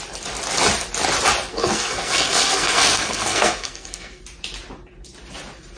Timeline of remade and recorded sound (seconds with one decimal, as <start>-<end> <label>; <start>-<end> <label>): 0.0-1.5 recorded; 1.5-4.2 remade; 4.2-5.8 recorded